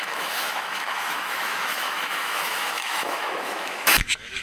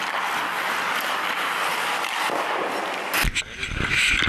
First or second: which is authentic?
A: second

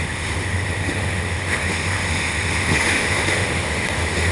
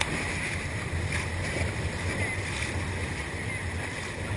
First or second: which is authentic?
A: second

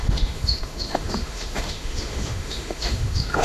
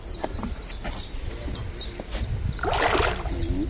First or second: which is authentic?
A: second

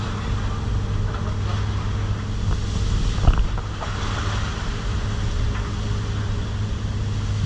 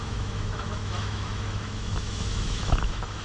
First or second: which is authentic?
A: first